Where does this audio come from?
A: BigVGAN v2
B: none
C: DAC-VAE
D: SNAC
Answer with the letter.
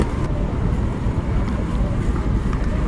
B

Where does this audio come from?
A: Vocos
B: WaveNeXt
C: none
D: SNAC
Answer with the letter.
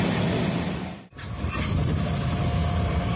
C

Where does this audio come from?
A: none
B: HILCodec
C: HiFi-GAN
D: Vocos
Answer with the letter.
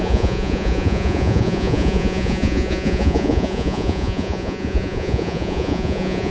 D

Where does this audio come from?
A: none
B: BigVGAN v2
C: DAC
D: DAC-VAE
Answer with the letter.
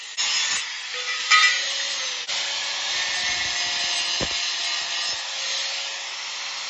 A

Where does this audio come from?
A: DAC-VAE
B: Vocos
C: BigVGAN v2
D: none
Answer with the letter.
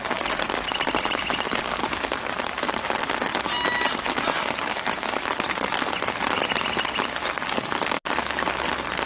D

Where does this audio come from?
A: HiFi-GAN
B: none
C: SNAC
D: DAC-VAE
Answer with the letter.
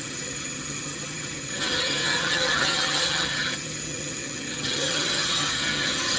A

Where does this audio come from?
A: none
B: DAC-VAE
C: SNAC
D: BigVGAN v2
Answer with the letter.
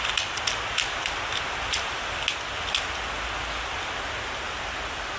A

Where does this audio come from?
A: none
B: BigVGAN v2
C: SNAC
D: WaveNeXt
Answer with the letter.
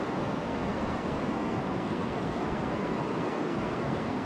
C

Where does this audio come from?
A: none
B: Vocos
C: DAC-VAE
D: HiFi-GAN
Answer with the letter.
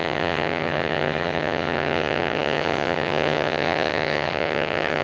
D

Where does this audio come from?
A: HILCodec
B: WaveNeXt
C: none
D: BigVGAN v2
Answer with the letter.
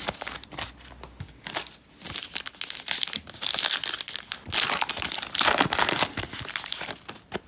C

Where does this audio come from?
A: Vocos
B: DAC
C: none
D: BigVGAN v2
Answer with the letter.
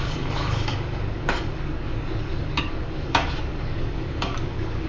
B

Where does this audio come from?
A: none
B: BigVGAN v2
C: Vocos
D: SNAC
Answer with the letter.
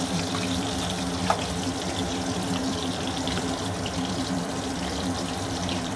B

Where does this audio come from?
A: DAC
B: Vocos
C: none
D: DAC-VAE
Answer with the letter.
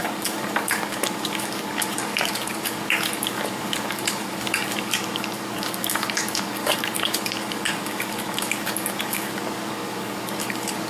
A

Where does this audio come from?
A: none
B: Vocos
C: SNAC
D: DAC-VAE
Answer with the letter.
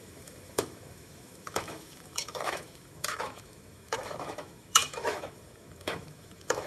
D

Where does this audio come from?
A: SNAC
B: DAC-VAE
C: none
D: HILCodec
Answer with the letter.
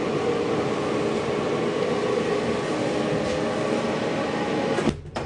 C